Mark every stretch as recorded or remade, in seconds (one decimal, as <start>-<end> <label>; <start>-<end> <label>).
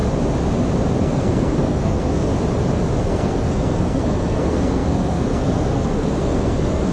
0.0-1.0 recorded; 1.0-2.3 remade; 2.3-3.0 recorded; 3.0-6.9 remade